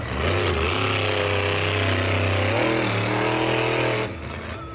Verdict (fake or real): real